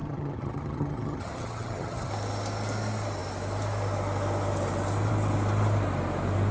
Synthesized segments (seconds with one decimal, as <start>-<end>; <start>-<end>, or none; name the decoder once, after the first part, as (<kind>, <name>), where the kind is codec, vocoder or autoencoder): 0.0-2.1 (vocoder, HiFi-GAN)